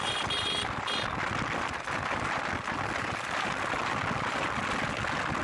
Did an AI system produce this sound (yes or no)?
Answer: no